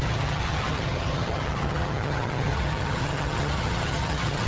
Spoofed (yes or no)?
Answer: yes